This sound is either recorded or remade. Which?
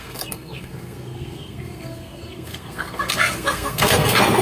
remade